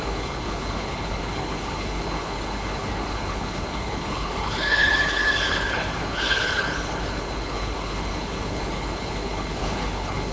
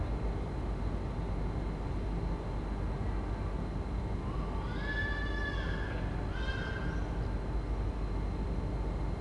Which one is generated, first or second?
first